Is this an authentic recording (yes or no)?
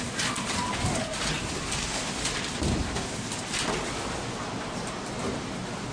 yes